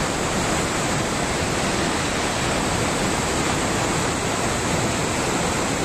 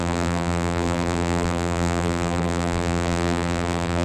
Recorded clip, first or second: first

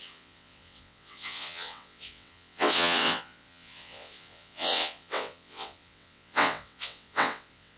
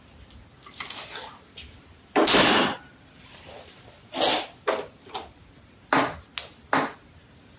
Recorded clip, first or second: second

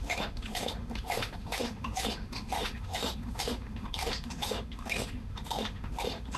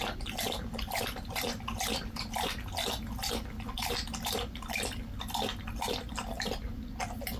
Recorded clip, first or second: second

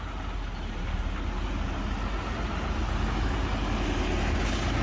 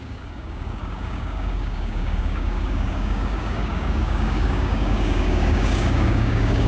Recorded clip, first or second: first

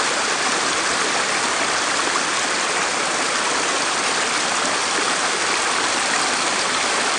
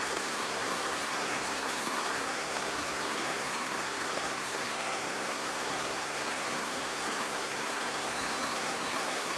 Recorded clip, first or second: first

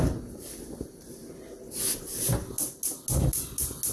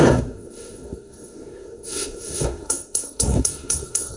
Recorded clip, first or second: first